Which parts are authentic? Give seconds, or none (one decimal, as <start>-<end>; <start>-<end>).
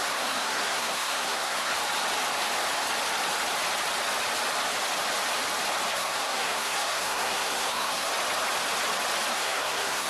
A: 1.7-5.9; 8.1-9.3